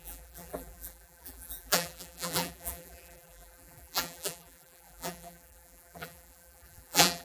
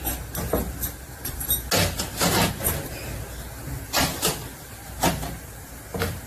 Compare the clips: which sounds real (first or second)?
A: second